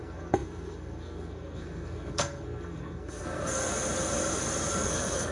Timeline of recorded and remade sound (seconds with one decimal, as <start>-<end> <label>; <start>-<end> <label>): 0.0-3.6 remade; 3.6-4.7 recorded; 4.7-5.3 remade